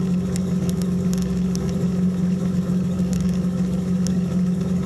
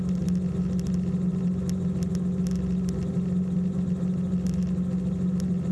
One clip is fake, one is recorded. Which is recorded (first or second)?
second